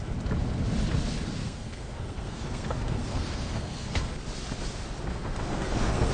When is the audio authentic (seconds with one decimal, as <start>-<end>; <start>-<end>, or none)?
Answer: 0.0-1.4; 4.1-5.1